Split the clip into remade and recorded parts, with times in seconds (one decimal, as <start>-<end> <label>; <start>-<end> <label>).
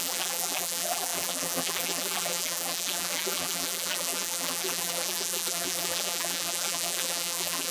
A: 0.0-7.7 remade